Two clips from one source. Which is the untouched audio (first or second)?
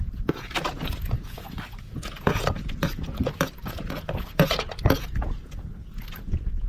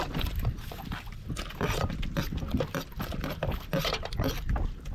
second